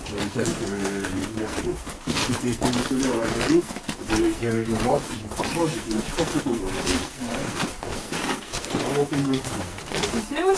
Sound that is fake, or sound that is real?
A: fake